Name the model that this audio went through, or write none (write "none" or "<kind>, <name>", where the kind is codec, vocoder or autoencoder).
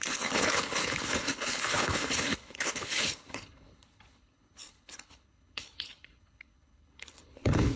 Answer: codec, HILCodec